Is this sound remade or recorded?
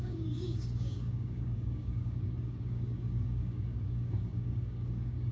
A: remade